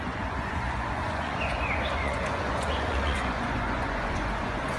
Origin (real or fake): fake